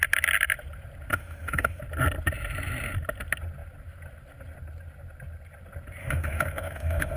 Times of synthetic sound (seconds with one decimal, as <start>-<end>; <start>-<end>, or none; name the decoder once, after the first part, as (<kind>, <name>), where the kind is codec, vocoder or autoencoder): 1.1-1.8 (autoencoder, DAC-VAE); 6.0-7.2